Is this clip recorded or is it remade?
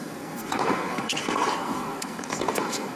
remade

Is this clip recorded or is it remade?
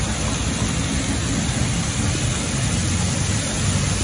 recorded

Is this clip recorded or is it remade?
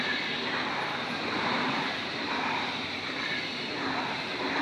recorded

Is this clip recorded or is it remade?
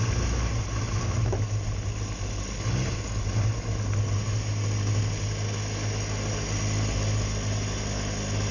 recorded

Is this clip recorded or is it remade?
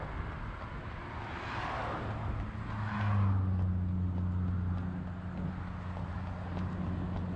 recorded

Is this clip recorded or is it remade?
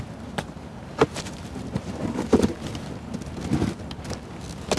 recorded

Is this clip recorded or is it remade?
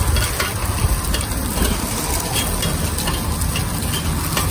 recorded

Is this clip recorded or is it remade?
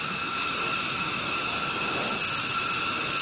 recorded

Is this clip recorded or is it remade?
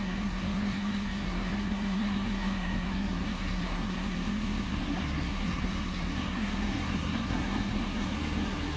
remade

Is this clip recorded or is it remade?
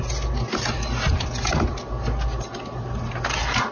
recorded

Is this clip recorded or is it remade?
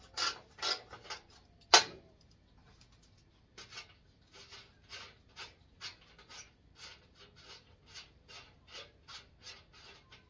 recorded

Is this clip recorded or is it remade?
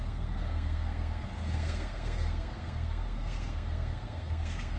remade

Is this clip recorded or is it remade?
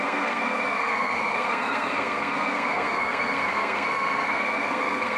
remade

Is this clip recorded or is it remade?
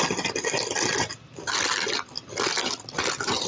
recorded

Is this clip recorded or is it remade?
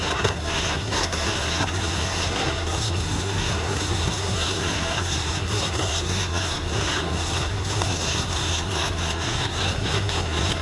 remade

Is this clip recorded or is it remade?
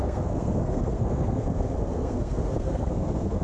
remade